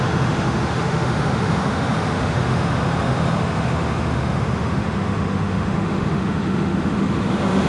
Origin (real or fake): fake